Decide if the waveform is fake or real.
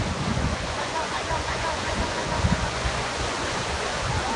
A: fake